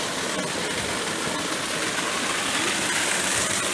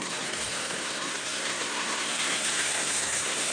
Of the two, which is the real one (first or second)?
first